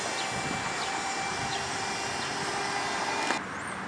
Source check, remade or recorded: recorded